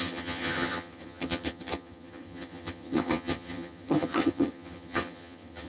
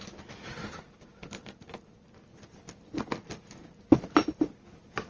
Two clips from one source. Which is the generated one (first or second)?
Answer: first